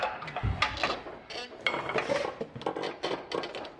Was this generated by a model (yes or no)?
no